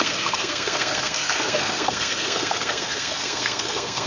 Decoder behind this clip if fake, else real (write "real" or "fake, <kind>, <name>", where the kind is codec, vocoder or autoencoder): fake, codec, SNAC